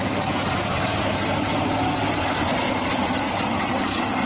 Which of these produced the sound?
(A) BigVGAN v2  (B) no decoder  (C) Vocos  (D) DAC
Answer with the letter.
B